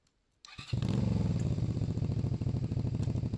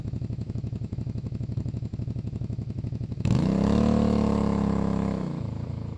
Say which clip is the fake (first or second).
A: second